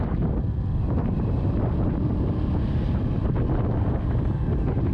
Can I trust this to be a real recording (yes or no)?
yes